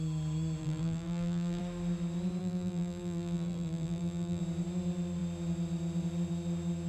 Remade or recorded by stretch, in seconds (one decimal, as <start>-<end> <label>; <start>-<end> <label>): 0.0-0.6 recorded; 0.6-1.6 remade; 1.6-2.4 recorded; 2.4-4.4 remade; 4.4-6.9 recorded